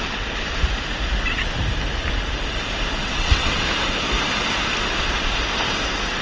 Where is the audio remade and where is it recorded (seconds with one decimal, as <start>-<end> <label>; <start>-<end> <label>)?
0.0-3.0 recorded; 3.0-3.7 remade; 3.7-6.2 recorded